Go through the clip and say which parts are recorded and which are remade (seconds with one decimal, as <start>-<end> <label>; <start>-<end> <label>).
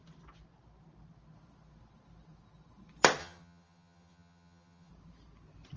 0.0-3.2 recorded; 3.2-4.9 remade; 4.9-5.8 recorded